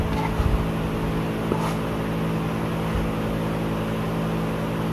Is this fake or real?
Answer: real